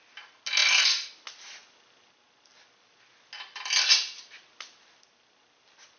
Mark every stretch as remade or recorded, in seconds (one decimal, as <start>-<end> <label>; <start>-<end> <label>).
0.0-6.0 recorded